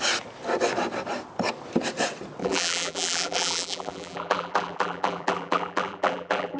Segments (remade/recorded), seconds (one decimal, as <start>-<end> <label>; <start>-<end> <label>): 0.0-2.4 recorded; 2.4-6.6 remade